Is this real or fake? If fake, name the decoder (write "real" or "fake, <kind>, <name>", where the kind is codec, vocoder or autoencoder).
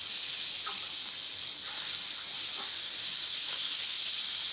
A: real